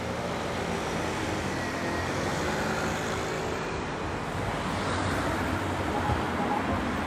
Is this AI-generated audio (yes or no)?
no